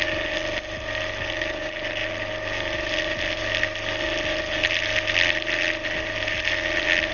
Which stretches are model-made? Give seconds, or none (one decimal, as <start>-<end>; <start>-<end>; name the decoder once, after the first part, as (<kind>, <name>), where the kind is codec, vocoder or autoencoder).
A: none